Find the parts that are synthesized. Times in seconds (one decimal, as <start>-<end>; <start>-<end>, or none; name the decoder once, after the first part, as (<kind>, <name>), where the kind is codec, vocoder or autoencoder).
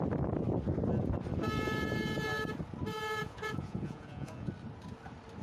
3.2-4.5 (vocoder, Vocos)